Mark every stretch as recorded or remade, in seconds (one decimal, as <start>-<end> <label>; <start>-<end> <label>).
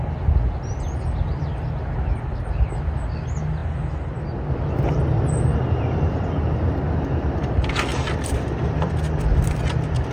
0.0-7.9 recorded; 7.9-8.5 remade; 8.5-10.1 recorded